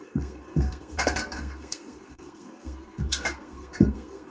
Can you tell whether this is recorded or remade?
remade